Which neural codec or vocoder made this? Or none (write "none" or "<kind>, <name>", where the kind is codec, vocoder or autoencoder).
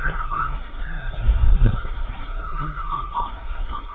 codec, SNAC